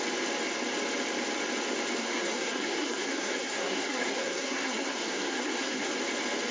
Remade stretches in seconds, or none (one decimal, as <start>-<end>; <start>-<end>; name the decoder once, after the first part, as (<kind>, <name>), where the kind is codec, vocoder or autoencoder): 2.0-5.9 (codec, SNAC)